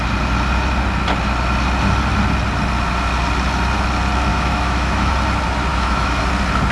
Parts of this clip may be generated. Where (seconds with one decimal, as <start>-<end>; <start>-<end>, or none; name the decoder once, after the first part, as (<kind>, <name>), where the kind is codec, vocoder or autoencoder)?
4.3-5.1 (autoencoder, DAC-VAE); 5.7-6.2